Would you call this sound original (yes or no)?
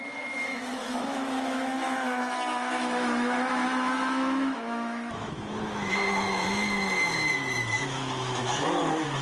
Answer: no